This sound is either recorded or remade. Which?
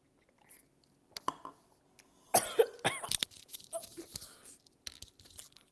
recorded